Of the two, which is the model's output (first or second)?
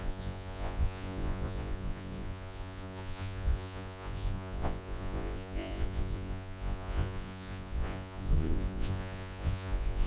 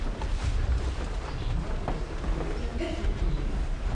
first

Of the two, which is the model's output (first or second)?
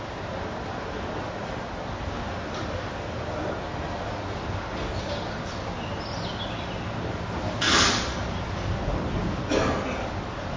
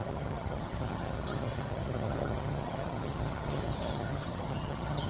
second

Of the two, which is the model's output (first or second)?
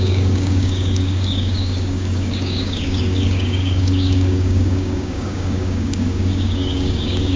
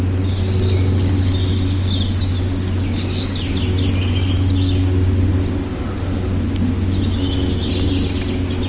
first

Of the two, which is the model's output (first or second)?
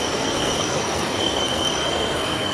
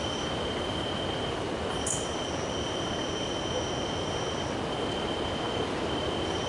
first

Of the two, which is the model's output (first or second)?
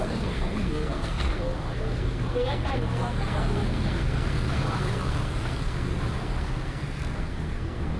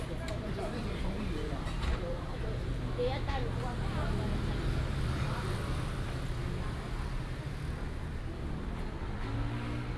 first